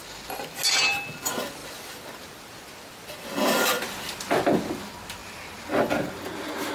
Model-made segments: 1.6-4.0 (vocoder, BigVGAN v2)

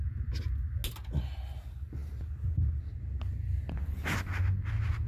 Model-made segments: none

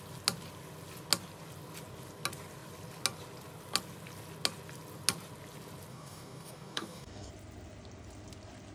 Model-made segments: 5.9-7.3 (codec, DAC)